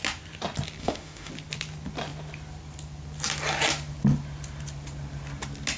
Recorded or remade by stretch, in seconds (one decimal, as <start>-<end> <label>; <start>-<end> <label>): 0.0-0.8 recorded; 0.8-1.3 remade; 1.3-5.8 recorded